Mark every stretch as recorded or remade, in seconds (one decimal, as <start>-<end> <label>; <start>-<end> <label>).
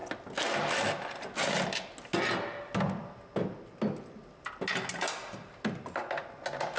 0.0-6.8 recorded